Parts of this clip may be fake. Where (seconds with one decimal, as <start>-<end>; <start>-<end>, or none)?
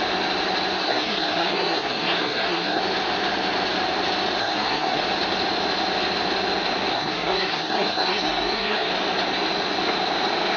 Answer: 0.8-2.8; 4.4-5.0; 6.9-8.9